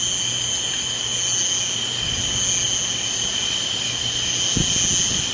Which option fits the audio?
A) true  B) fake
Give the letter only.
A